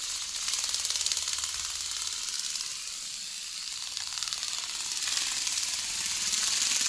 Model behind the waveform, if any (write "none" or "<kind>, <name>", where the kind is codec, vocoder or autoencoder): none